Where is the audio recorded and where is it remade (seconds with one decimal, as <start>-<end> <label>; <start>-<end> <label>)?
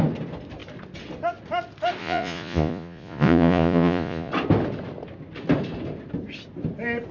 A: 0.0-2.0 recorded; 2.0-4.3 remade; 4.3-7.1 recorded